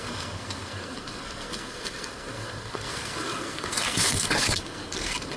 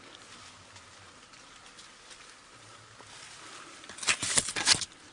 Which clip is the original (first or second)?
second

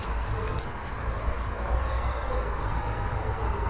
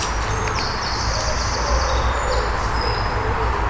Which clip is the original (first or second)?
second